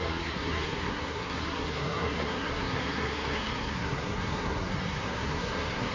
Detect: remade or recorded remade